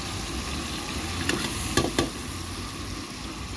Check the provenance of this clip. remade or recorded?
recorded